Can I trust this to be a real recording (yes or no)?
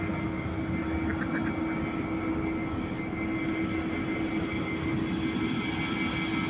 yes